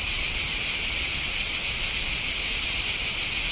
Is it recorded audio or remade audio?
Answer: recorded